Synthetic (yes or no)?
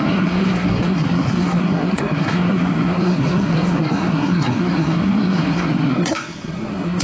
yes